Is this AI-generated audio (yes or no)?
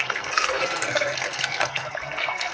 yes